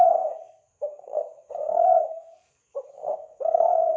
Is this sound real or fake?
fake